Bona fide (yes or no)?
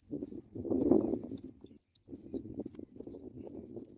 yes